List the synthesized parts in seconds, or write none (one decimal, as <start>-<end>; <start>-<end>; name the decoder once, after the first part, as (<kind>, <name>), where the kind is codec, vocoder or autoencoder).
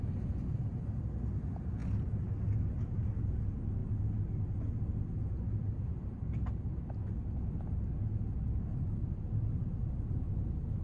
none